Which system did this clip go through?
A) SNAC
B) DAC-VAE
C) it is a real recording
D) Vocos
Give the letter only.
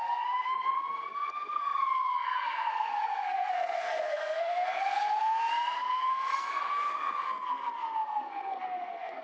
A